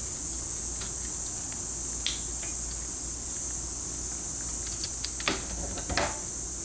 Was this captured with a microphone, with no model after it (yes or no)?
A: yes